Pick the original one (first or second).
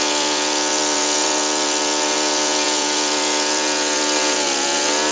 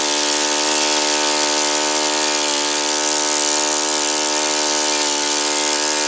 second